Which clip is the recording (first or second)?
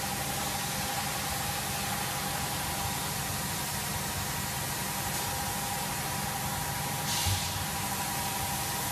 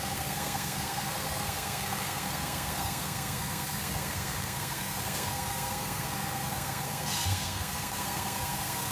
first